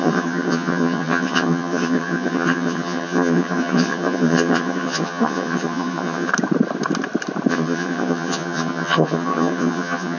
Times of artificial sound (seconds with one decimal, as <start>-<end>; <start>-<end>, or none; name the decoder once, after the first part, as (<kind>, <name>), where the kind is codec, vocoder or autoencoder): 0.0-6.3 (vocoder, HiFi-GAN); 7.5-10.2